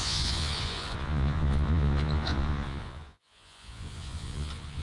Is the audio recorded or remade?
remade